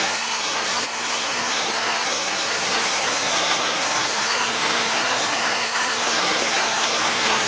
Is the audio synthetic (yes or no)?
yes